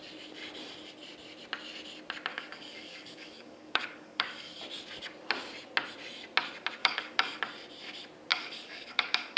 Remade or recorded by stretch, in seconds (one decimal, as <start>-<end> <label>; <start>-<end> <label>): 0.0-2.3 recorded; 2.3-4.6 remade; 4.6-6.8 recorded; 6.8-7.4 remade; 7.4-8.3 recorded; 8.3-9.4 remade